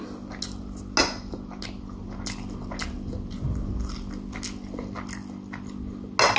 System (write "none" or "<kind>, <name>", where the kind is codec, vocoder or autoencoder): none